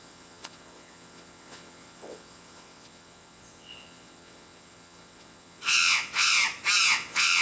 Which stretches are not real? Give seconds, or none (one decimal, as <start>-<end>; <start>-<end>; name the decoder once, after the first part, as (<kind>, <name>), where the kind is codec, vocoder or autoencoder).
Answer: 0.0-6.3 (vocoder, WaveNeXt); 6.9-7.4